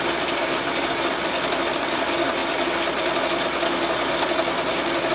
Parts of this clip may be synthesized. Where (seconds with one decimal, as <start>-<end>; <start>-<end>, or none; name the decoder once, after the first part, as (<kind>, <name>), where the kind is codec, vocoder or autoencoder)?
0.0-2.4 (vocoder, BigVGAN v2)